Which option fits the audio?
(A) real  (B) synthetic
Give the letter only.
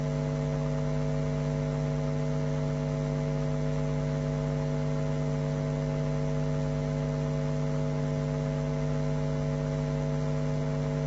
A